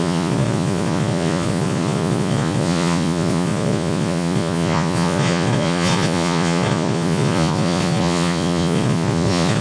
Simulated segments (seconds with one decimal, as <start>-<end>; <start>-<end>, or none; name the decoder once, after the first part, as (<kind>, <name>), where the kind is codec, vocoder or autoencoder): 0.0-9.6 (vocoder, Vocos)